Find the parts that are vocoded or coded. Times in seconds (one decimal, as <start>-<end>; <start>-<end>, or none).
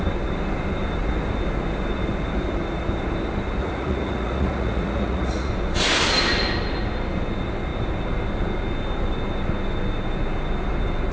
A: 3.6-5.5